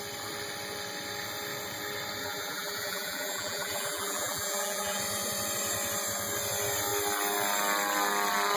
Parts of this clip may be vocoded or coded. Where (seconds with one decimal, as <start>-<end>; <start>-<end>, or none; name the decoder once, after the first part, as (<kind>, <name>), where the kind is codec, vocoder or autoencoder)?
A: 2.2-5.0 (vocoder, BigVGAN v2)